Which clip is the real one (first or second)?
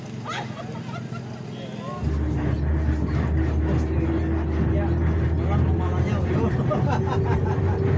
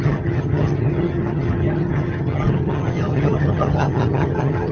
first